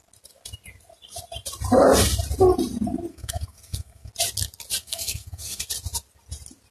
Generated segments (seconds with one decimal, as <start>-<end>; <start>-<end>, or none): 3.1-4.1; 4.8-5.6